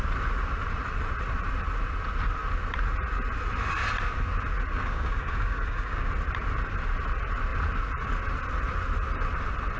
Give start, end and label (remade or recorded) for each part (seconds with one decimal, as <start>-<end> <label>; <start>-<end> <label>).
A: 0.0-4.7 recorded; 4.7-6.1 remade; 6.1-9.8 recorded